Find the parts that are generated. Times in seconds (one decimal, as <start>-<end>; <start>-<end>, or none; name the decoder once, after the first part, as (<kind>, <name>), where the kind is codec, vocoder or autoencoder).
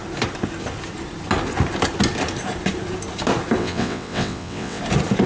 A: 3.6-4.8 (vocoder, WaveNeXt)